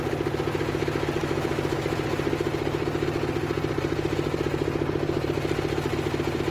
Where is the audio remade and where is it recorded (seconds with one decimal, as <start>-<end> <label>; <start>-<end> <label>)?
0.0-1.2 recorded; 1.2-1.8 remade; 1.8-6.5 recorded